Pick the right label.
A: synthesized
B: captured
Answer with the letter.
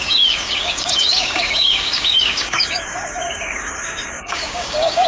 A